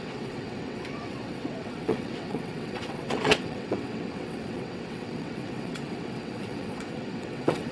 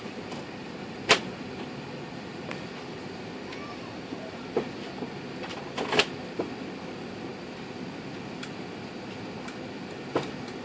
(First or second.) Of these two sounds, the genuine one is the second